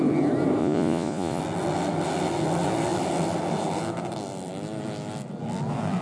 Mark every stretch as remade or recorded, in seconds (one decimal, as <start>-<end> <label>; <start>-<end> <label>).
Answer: 0.0-0.6 recorded; 0.6-1.4 remade; 1.4-6.0 recorded